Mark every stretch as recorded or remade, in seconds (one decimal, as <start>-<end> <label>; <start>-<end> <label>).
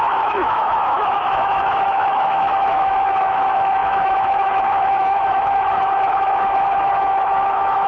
0.0-7.9 remade